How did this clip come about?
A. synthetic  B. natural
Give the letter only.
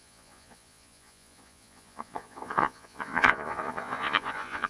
A